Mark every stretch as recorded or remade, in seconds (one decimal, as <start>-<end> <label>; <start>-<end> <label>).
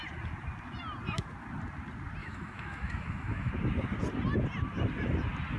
0.0-2.2 recorded; 2.2-3.5 remade; 3.5-5.6 recorded